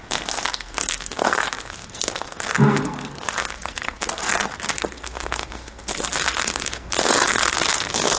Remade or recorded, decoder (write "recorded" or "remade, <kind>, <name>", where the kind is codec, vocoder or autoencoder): remade, codec, SNAC